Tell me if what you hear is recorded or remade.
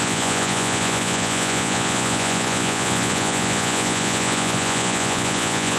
remade